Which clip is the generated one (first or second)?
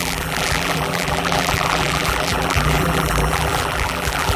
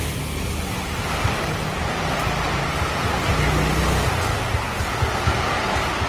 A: first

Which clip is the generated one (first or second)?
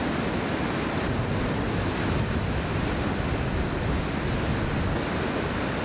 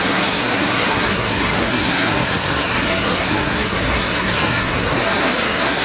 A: second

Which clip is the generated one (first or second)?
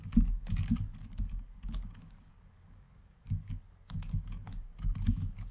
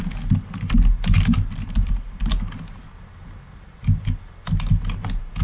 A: first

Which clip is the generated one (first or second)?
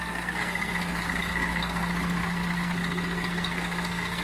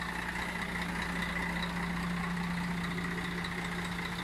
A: first